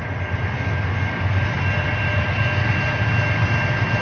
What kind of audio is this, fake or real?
real